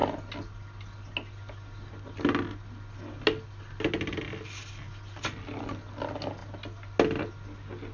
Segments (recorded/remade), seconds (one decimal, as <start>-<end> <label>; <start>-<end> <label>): 0.0-7.9 recorded